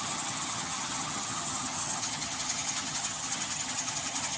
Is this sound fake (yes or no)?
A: yes